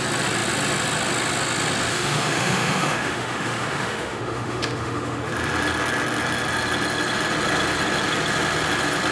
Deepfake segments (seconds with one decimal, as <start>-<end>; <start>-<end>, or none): 1.9-5.2